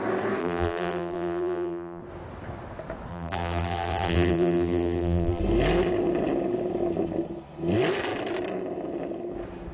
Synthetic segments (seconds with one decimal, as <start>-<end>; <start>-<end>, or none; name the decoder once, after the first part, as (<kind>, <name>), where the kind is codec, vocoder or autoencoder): 0.4-2.0 (vocoder, BigVGAN v2); 3.1-5.4